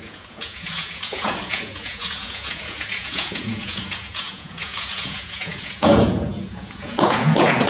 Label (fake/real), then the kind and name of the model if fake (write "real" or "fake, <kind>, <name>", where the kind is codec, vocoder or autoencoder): fake, vocoder, Vocos